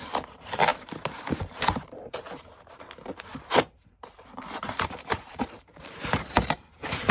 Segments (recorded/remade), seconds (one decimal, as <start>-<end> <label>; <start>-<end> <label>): 0.0-7.1 remade